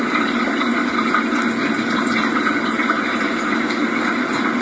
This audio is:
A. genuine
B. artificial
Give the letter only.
B